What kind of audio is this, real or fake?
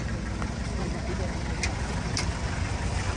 real